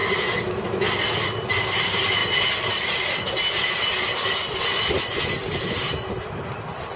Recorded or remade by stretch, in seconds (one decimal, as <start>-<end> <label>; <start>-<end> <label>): 0.0-7.0 recorded